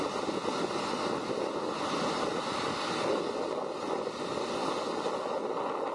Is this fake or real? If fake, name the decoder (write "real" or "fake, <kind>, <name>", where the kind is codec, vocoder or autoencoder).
real